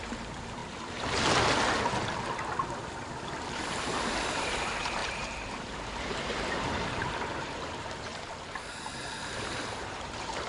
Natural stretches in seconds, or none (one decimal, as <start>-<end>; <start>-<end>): 0.6-3.1; 8.1-9.3